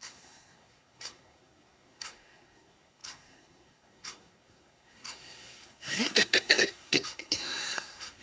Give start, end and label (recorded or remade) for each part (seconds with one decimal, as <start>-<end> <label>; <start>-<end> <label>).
0.0-8.2 remade